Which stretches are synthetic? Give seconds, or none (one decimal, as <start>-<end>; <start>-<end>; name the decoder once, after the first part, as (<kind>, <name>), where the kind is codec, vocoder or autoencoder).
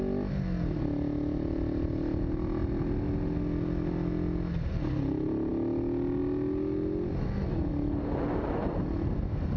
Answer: none